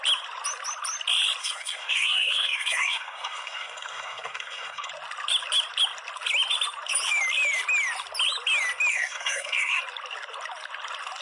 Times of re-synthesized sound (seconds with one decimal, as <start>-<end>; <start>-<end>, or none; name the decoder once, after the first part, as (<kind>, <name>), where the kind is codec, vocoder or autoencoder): 1.4-4.9 (codec, SNAC); 8.9-9.8